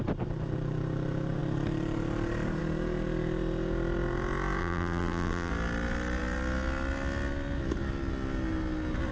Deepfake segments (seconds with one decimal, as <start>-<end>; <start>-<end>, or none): 4.6-5.5